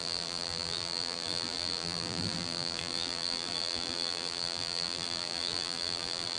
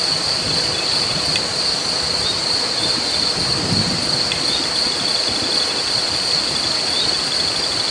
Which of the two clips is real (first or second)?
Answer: second